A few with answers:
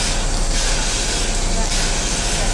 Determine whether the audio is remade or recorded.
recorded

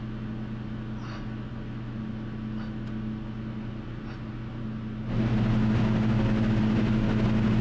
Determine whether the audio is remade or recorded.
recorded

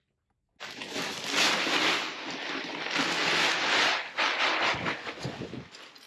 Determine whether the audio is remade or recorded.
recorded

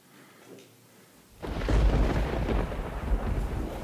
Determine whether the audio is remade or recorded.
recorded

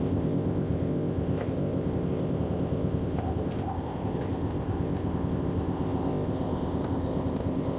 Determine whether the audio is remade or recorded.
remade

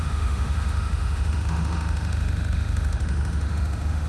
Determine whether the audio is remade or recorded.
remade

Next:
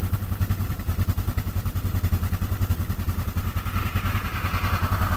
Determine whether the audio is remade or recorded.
recorded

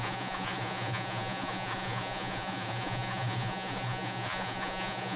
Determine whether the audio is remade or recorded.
remade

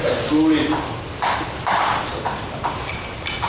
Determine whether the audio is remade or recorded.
recorded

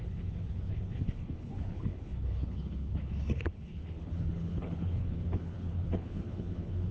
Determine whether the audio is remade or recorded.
remade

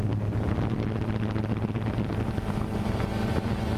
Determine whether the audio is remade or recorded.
recorded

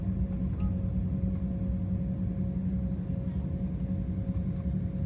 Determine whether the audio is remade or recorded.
recorded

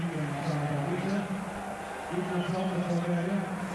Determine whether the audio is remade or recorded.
recorded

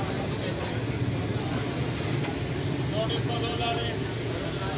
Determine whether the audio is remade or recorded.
recorded